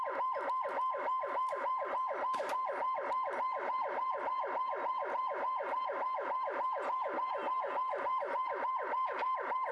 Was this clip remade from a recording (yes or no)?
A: no